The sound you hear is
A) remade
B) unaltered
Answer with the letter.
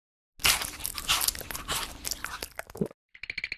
B